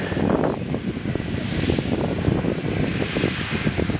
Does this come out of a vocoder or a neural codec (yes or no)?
no